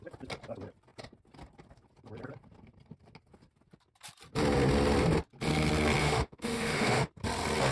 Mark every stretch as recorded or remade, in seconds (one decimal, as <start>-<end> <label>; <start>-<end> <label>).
0.0-6.0 recorded; 6.0-7.1 remade; 7.1-7.7 recorded